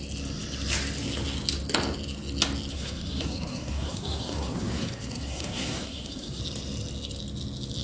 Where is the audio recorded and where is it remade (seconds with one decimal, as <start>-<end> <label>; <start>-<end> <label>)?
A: 0.0-2.7 recorded; 2.7-6.4 remade; 6.4-7.8 recorded